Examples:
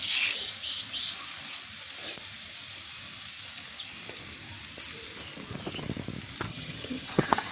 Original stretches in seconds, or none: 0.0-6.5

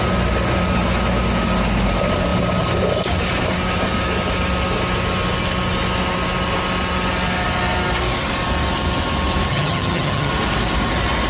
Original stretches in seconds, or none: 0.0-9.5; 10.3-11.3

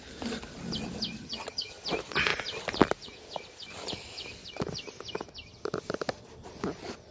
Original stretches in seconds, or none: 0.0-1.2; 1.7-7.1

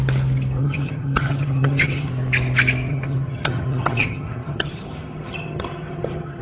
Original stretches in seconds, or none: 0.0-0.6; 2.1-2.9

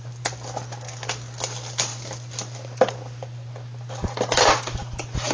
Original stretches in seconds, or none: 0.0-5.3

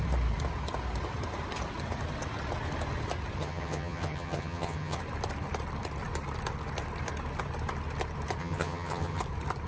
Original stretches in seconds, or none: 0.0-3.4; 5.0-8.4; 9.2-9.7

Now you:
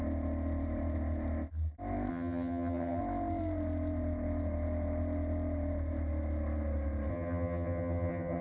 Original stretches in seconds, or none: 0.0-2.1; 3.0-7.1

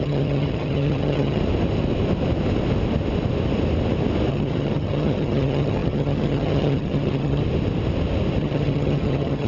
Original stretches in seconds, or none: 1.4-4.3; 7.4-8.4